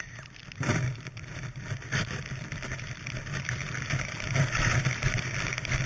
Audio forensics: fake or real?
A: fake